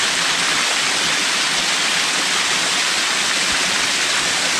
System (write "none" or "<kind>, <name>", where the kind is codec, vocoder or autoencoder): none